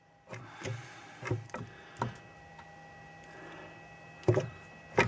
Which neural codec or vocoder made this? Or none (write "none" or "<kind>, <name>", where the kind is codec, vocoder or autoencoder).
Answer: none